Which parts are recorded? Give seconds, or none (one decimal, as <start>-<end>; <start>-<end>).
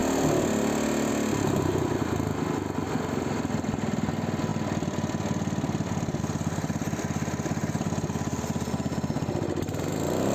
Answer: 0.0-10.3